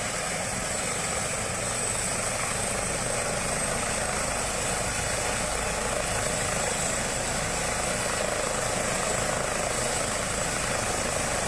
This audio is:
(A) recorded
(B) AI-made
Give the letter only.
A